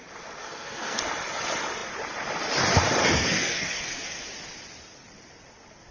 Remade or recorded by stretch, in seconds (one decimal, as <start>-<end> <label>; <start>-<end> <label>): 0.0-0.4 recorded; 0.4-1.0 remade; 1.0-3.0 recorded; 3.0-4.2 remade; 4.2-5.9 recorded